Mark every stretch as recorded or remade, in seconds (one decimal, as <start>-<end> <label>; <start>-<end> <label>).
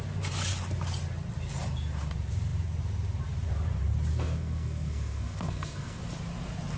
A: 0.0-4.1 recorded; 4.1-6.0 remade; 6.0-6.8 recorded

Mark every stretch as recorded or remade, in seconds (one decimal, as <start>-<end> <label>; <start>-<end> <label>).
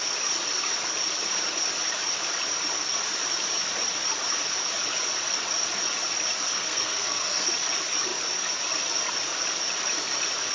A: 0.0-6.5 recorded; 6.5-7.5 remade; 7.5-10.5 recorded